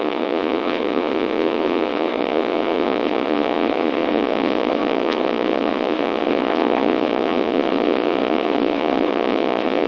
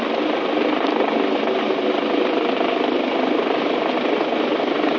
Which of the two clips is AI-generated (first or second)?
first